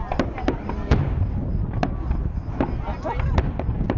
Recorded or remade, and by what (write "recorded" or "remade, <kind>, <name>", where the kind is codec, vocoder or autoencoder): recorded